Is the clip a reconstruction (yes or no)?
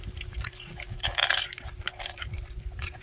yes